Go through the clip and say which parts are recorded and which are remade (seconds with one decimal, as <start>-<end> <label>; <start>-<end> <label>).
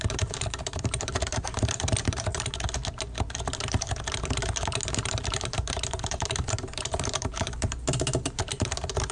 0.0-2.3 remade; 2.3-5.3 recorded; 5.3-9.1 remade